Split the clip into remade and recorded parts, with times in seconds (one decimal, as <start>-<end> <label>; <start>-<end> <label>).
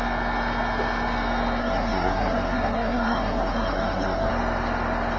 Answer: 0.0-1.6 recorded; 1.6-4.3 remade; 4.3-5.2 recorded